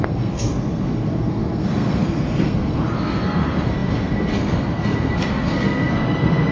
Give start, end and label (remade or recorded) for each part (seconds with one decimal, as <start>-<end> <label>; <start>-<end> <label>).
0.0-6.5 remade